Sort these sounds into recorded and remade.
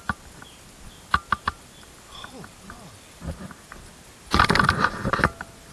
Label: recorded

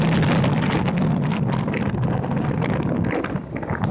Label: recorded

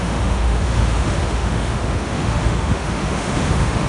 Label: remade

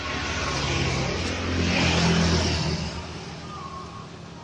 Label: recorded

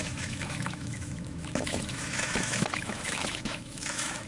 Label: remade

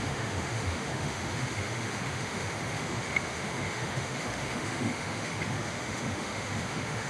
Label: remade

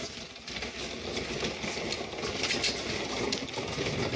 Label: recorded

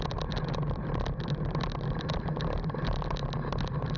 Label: recorded